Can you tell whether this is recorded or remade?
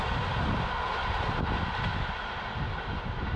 recorded